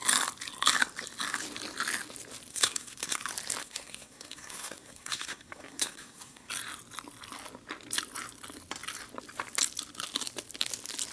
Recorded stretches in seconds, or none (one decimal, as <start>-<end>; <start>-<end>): 0.0-2.5; 3.2-3.6; 6.5-11.1